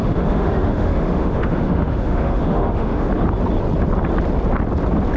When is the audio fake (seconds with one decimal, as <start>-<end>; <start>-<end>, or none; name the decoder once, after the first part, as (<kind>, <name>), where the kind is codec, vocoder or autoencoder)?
0.0-3.1 (autoencoder, DAC-VAE)